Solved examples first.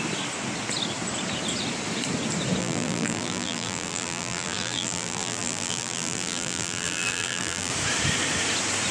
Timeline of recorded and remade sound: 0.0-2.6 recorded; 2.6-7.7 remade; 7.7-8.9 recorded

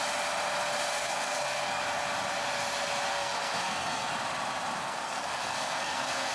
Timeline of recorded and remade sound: 0.0-0.9 recorded; 0.9-1.8 remade; 1.8-3.1 recorded; 3.1-4.1 remade; 4.1-4.8 recorded; 4.8-6.3 remade

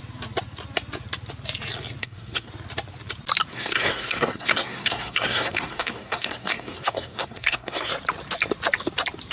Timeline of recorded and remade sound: 0.0-2.0 recorded; 2.0-2.5 remade; 2.5-3.5 recorded; 3.5-7.9 remade; 7.9-9.3 recorded

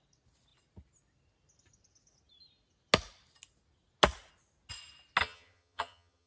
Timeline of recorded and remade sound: 0.0-5.2 recorded; 5.2-6.3 remade